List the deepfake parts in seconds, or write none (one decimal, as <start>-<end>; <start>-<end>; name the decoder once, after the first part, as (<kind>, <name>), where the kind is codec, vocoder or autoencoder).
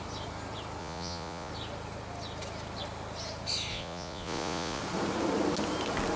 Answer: 0.8-1.5 (vocoder, Vocos); 3.7-4.8